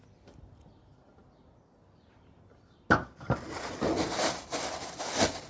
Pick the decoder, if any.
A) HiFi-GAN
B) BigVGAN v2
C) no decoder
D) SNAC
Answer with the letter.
C